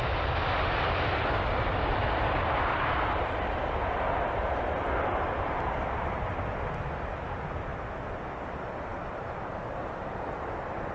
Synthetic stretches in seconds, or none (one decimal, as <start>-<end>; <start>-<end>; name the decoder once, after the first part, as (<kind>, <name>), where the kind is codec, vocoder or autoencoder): none